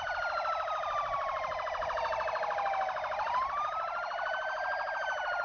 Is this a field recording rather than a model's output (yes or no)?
yes